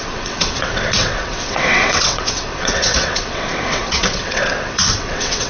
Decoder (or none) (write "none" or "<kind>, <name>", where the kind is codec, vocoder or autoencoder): vocoder, WaveNeXt